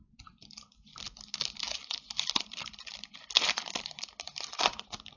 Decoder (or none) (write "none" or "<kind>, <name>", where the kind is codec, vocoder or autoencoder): none